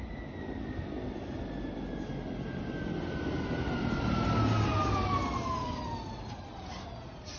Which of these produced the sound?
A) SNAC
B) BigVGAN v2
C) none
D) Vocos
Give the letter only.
C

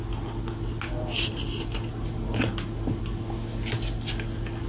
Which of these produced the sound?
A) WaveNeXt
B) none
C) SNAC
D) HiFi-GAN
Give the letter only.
B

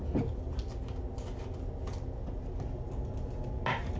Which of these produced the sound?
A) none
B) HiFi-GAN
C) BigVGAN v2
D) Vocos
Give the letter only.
A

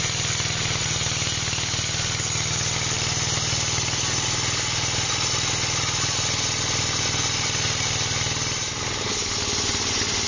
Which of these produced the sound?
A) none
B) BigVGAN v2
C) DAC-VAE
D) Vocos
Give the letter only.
A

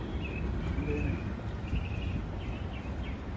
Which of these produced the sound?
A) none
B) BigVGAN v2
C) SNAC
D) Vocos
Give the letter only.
A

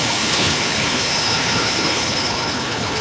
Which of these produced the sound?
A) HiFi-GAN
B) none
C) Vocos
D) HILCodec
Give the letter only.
D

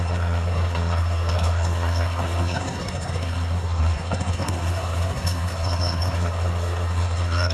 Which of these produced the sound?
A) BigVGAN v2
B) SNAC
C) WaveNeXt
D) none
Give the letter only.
B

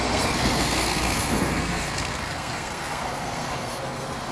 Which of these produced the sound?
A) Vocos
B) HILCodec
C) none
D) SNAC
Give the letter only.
D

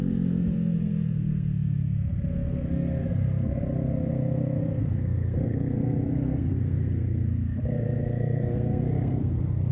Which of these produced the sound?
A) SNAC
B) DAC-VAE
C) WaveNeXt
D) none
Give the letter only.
A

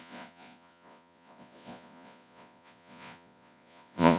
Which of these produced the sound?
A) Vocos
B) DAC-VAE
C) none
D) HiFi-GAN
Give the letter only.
A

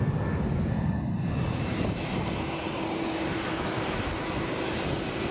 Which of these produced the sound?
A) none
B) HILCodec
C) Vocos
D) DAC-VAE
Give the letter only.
A